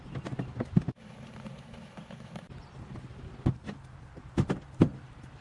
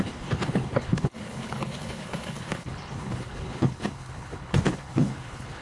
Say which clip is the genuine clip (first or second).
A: first